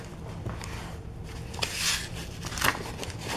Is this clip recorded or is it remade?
recorded